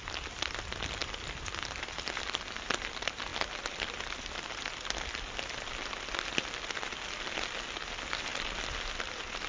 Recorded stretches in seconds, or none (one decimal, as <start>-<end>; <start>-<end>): 0.0-9.5